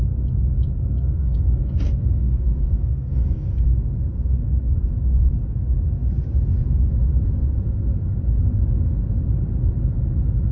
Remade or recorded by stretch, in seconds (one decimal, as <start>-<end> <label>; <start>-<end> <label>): 0.0-1.1 recorded; 1.1-3.7 remade; 3.7-10.5 recorded